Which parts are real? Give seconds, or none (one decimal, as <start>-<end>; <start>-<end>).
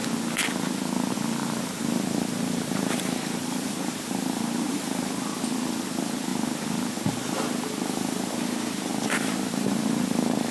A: 0.0-1.4; 5.1-8.9